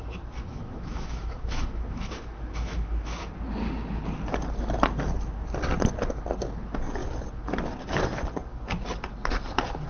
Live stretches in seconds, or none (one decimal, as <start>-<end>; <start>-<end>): 0.0-0.5; 3.3-9.9